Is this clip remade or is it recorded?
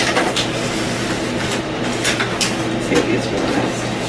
recorded